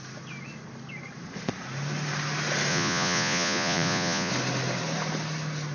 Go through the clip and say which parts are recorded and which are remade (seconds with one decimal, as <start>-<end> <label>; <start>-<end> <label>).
0.0-2.7 recorded; 2.7-4.3 remade; 4.3-5.7 recorded